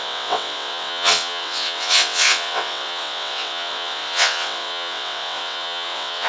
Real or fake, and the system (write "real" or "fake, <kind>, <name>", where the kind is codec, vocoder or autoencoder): fake, vocoder, WaveNeXt